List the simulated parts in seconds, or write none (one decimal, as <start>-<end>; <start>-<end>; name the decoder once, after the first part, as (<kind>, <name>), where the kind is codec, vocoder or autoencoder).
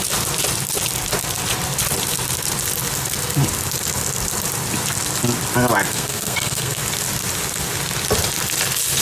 5.9-6.8 (codec, SNAC)